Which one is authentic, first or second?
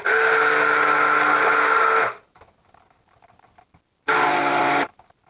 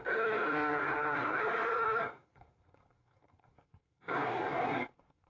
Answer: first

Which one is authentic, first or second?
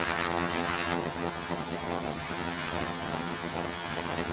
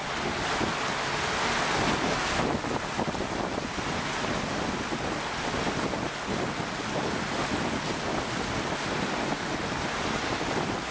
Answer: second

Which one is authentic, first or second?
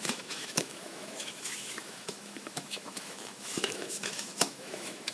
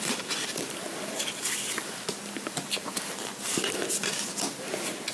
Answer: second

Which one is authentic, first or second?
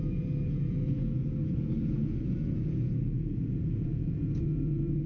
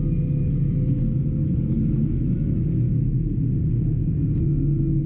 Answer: second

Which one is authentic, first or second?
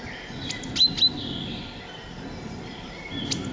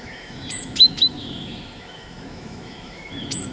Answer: first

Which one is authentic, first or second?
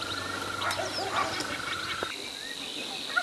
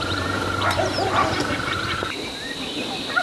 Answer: first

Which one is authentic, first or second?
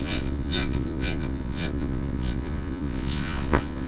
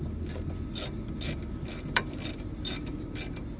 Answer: second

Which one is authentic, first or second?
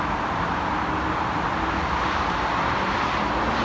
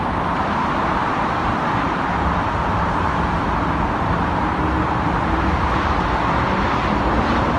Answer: first